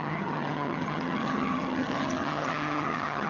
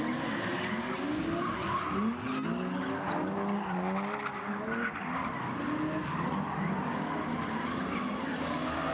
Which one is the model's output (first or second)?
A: first